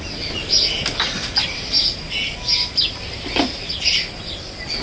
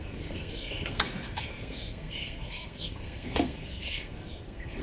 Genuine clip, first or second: first